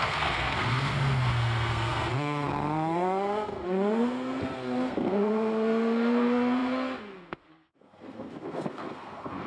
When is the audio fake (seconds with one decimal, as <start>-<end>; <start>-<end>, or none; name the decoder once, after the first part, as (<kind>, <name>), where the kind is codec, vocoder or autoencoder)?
0.0-9.5 (codec, SNAC)